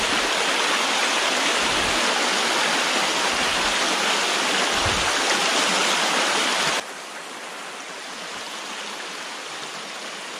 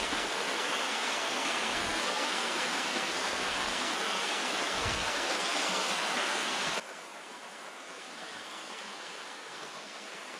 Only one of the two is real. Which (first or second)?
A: first